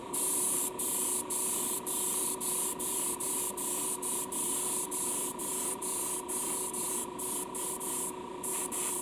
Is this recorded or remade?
remade